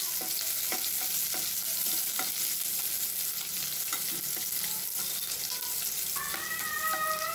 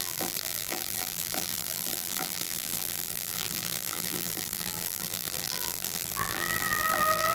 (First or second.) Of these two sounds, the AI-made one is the second